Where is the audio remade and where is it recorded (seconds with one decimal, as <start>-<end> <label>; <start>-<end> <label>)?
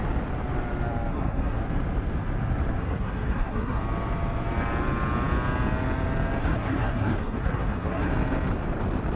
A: 0.0-1.1 recorded; 1.1-1.6 remade; 1.6-2.8 recorded; 2.8-3.8 remade; 3.8-6.4 recorded; 6.4-8.1 remade; 8.1-9.2 recorded